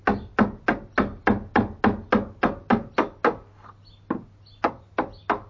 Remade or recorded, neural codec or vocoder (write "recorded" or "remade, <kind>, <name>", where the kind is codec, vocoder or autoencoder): recorded